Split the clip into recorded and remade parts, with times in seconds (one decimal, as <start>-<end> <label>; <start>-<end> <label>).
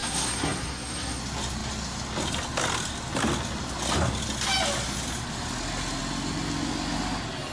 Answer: 0.0-1.2 remade; 1.2-7.5 recorded